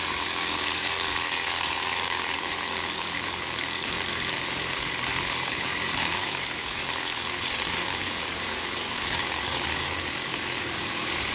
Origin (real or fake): fake